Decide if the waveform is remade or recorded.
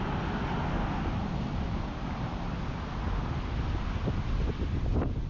recorded